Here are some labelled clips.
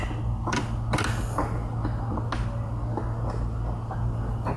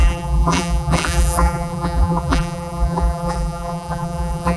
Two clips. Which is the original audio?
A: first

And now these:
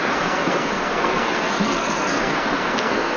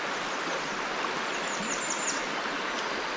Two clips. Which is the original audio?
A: second